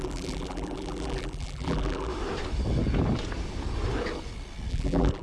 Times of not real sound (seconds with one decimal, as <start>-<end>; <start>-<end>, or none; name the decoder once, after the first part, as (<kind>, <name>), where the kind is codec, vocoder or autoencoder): 0.0-2.1 (vocoder, BigVGAN v2); 4.7-5.2